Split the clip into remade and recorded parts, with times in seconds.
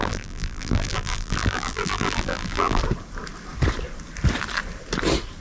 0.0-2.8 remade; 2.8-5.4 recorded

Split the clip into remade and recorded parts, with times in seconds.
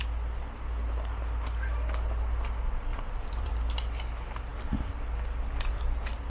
0.0-2.9 recorded; 2.9-3.5 remade; 3.5-6.3 recorded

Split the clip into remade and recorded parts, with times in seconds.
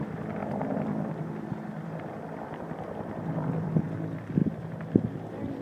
0.0-0.4 recorded; 0.4-3.8 remade; 3.8-5.6 recorded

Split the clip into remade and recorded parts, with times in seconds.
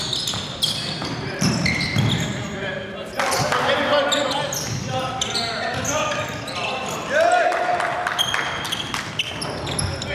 0.0-1.0 recorded; 1.0-1.5 remade; 1.5-10.1 recorded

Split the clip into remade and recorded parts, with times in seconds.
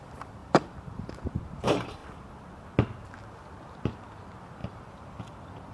0.0-2.0 remade; 2.0-3.8 recorded; 3.8-5.7 remade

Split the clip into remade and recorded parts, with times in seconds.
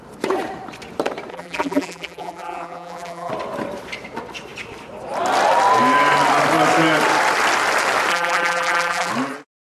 0.0-1.3 recorded; 1.3-3.3 remade; 3.3-8.1 recorded; 8.1-9.1 remade; 9.1-9.6 recorded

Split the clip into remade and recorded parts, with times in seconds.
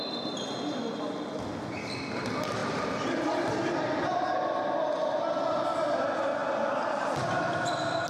0.0-6.4 recorded; 6.4-8.1 remade